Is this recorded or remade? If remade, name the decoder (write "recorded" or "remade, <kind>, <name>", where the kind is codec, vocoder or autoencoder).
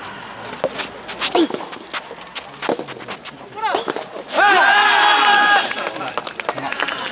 recorded